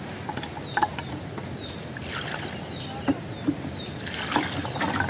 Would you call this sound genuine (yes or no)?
yes